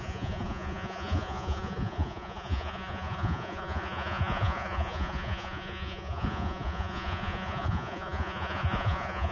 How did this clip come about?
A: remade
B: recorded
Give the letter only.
A